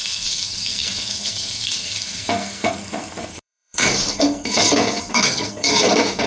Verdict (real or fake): fake